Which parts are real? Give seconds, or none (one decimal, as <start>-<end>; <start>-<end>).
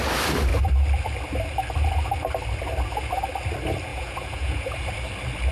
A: 0.0-3.9; 4.7-5.5